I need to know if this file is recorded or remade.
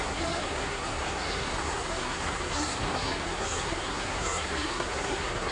remade